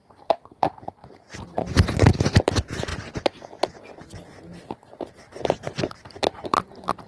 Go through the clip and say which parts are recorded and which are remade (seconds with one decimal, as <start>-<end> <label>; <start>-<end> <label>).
0.0-1.0 remade; 1.0-1.7 recorded; 1.7-2.9 remade; 2.9-5.9 recorded; 5.9-7.1 remade